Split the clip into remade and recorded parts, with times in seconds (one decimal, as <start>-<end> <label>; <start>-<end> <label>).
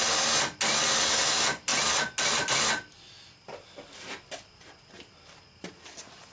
0.0-6.3 recorded